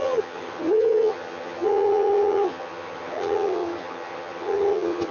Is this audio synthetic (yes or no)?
yes